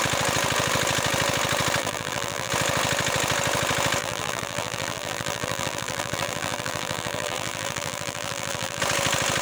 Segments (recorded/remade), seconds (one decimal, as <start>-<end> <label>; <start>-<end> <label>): 0.0-1.8 recorded; 1.8-2.5 remade; 2.5-4.0 recorded; 4.0-8.8 remade; 8.8-9.4 recorded